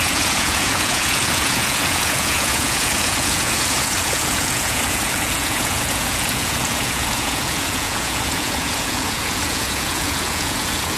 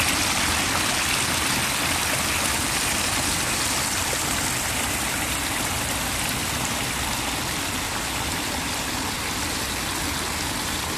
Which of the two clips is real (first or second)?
second